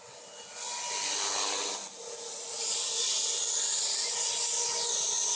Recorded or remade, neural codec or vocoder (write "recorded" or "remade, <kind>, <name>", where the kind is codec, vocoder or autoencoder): recorded